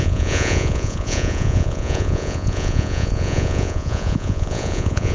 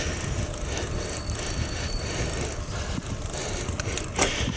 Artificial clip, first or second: first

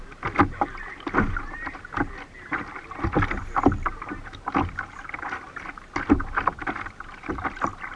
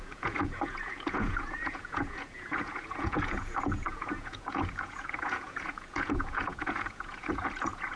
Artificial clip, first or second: second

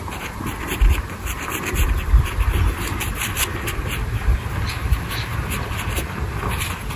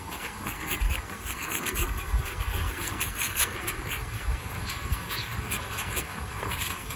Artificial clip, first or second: second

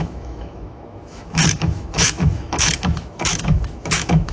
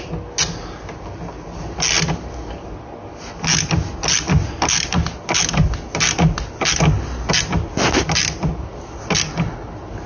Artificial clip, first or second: first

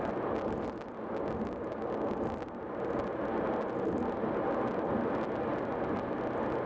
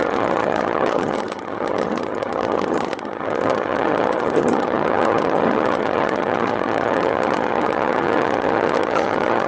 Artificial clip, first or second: second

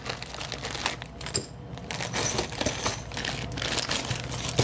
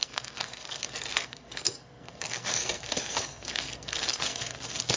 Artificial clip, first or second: second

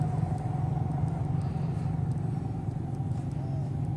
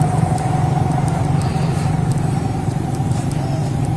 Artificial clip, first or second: second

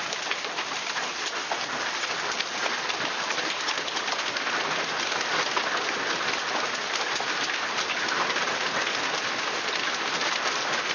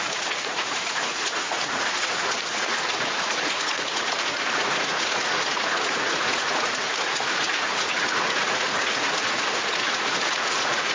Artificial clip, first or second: second